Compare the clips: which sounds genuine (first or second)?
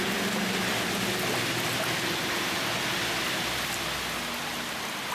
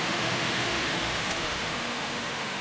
first